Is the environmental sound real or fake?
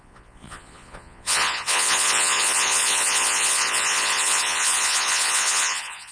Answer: fake